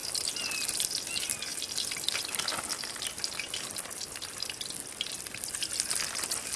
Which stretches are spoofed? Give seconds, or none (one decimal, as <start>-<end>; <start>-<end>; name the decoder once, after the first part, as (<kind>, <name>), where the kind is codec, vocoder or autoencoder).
none